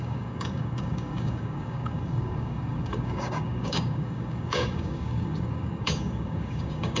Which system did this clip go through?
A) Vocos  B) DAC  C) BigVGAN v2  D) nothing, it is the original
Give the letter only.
B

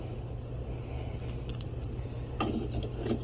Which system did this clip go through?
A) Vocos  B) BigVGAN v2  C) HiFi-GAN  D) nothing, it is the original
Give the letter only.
D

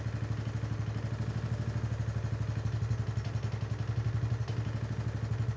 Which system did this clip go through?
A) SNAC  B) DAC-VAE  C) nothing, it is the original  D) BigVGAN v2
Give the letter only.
C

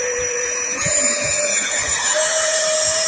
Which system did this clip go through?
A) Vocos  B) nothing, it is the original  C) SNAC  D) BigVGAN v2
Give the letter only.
A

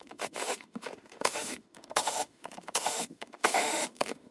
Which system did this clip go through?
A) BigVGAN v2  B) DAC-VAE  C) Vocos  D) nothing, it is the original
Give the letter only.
B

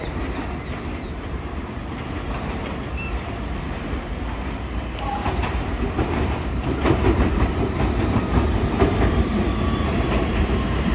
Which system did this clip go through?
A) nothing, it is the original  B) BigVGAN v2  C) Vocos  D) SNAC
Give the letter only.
B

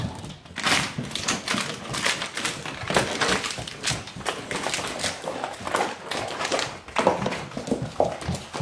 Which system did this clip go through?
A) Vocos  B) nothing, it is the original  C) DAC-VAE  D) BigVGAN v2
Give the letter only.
B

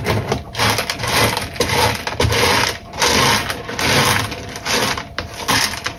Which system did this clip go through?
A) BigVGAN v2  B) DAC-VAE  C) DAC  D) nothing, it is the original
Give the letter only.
D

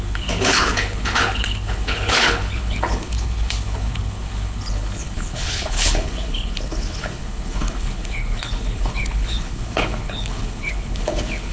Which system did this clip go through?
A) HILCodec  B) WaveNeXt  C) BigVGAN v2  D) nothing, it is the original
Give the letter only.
A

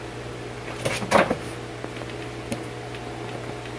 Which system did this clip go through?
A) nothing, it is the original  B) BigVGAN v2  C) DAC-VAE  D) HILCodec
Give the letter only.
A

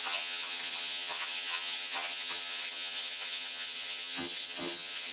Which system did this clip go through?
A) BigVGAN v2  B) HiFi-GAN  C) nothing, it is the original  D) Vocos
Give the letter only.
B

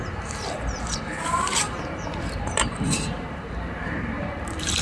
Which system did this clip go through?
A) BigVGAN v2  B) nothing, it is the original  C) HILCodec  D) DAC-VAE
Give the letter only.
A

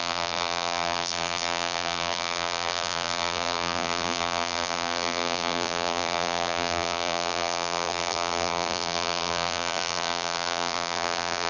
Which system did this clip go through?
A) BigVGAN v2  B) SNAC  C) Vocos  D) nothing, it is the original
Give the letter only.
A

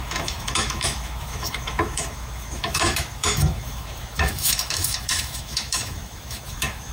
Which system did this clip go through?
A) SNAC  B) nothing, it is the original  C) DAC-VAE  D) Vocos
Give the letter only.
C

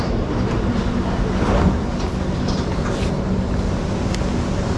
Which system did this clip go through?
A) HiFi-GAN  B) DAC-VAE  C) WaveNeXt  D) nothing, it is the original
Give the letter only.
D